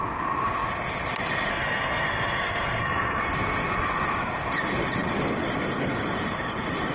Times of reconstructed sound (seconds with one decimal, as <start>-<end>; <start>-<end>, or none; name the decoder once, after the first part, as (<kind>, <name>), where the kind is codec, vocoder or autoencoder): 1.5-3.2 (codec, SNAC)

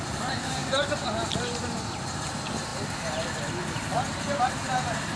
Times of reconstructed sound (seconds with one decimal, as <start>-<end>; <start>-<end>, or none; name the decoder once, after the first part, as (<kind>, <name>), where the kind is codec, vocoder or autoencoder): none

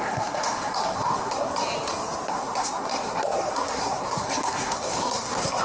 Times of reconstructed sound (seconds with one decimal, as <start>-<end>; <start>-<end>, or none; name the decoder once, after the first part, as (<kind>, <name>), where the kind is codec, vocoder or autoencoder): 0.0-1.5 (codec, SNAC); 2.3-5.6

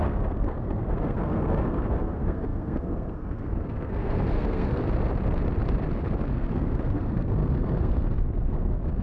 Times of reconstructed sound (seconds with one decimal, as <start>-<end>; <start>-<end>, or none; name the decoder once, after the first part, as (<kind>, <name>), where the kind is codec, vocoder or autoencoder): 0.0-4.8 (codec, SNAC); 6.3-9.0

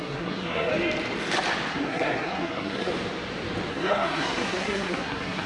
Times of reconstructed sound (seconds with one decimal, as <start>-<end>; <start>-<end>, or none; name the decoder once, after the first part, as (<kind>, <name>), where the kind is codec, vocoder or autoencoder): 0.0-0.7 (codec, SNAC); 1.7-2.9; 3.7-5.5